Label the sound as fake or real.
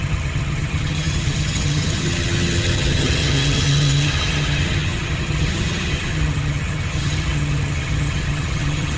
fake